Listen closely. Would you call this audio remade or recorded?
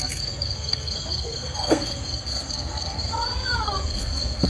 remade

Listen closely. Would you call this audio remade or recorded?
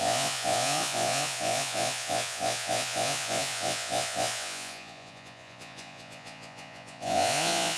remade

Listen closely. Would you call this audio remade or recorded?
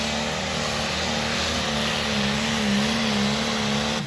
recorded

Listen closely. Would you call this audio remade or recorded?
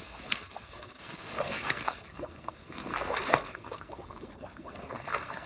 remade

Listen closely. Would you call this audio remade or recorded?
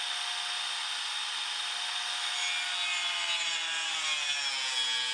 recorded